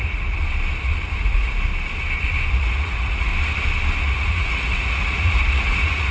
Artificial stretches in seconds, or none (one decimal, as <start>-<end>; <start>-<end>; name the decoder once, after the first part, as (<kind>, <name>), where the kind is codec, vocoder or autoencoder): 0.0-0.4 (vocoder, Vocos); 1.2-1.7; 2.5-3.3; 4.0-6.1